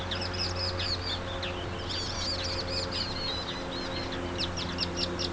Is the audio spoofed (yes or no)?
no